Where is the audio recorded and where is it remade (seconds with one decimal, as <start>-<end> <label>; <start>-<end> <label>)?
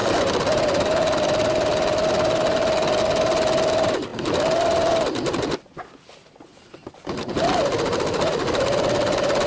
0.0-9.5 recorded